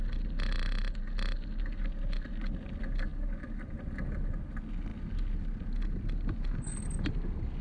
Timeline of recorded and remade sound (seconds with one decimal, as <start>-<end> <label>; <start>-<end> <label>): 0.0-7.6 recorded